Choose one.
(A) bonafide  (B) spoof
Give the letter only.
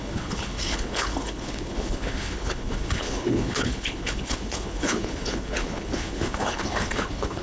B